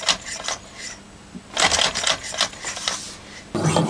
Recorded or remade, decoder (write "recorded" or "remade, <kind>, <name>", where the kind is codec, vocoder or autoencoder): recorded